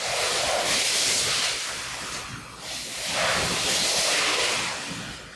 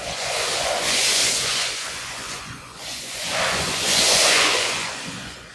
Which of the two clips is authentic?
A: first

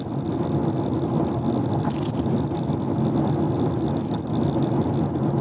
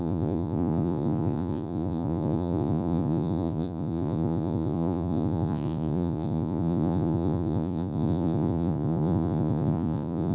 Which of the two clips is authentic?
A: first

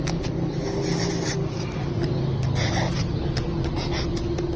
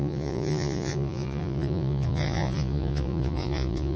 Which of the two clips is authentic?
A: first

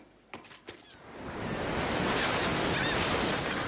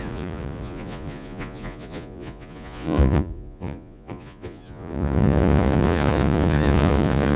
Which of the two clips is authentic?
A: first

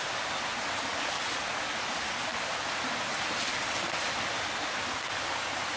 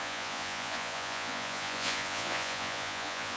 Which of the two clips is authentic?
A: first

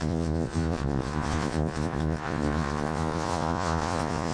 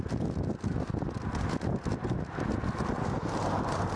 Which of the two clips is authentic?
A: second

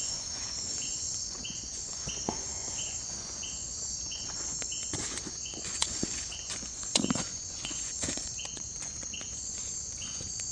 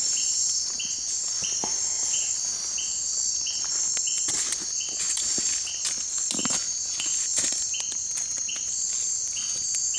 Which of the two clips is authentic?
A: second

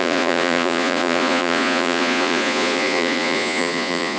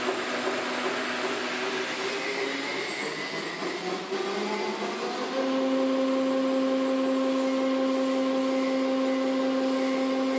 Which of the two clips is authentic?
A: second